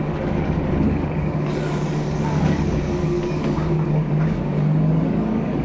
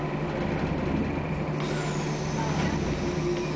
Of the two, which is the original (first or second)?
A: second